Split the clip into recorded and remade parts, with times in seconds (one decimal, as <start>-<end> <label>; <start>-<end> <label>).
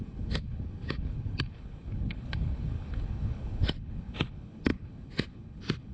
0.0-5.9 remade